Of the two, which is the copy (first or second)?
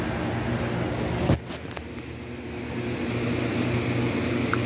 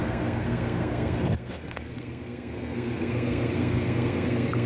second